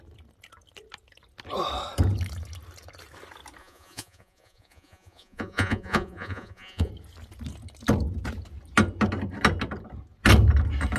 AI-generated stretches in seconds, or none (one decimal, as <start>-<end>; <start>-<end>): 3.6-6.9